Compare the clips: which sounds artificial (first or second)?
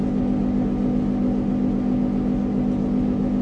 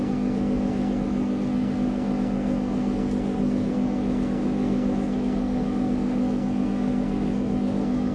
second